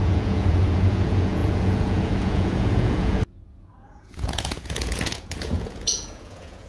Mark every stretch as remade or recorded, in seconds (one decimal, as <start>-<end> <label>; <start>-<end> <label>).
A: 0.0-6.7 remade